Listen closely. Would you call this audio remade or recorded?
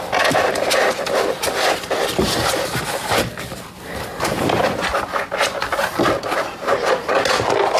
recorded